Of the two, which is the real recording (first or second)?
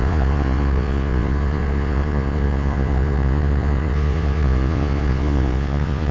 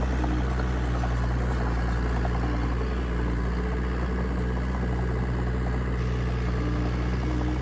second